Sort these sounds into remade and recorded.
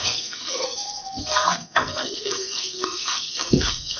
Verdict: remade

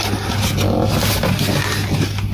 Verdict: recorded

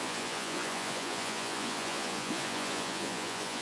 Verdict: remade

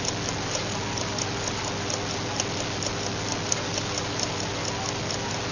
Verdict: recorded